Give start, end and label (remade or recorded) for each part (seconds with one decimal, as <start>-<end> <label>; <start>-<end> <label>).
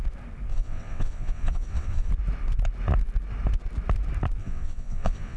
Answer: 0.0-0.5 recorded; 0.5-2.1 remade; 2.1-4.4 recorded; 4.4-5.4 remade